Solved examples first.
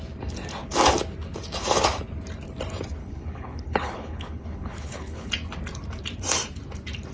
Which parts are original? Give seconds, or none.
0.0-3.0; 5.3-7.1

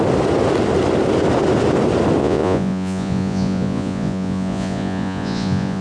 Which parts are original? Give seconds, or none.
0.0-2.2